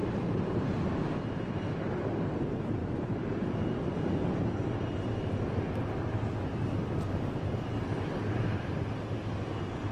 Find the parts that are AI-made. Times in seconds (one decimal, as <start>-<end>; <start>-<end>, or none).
0.0-0.6; 2.8-4.7; 6.5-8.0